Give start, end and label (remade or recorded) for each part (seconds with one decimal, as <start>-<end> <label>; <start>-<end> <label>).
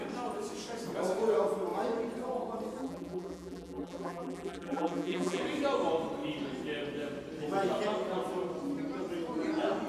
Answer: 0.0-2.8 recorded; 2.8-5.4 remade; 5.4-9.9 recorded